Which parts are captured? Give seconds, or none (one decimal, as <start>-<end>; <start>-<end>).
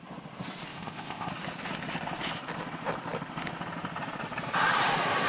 0.0-0.7; 1.3-5.3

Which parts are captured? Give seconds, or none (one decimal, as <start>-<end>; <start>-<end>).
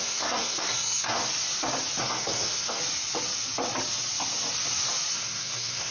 1.2-2.0; 2.8-5.1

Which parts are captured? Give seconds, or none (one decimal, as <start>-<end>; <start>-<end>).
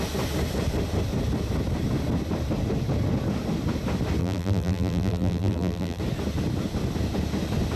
0.0-4.2; 6.0-7.8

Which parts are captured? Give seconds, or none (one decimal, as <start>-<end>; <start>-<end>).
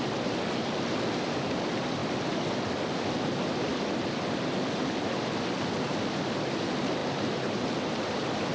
0.0-8.5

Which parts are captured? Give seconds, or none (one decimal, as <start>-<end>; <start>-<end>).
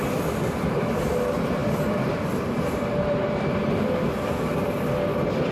0.0-5.5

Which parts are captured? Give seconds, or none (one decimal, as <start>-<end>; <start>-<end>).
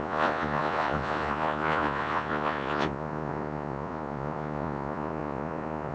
none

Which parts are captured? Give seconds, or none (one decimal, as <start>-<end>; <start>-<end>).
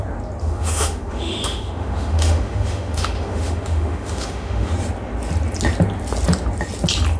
0.0-0.4; 4.7-7.2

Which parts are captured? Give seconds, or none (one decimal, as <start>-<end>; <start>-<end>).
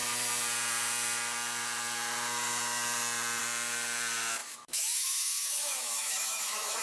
0.0-4.4